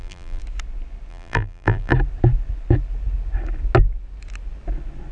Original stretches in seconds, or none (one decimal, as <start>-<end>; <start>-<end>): 0.4-1.1; 1.9-5.1